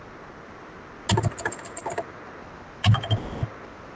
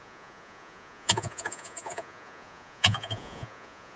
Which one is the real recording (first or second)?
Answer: first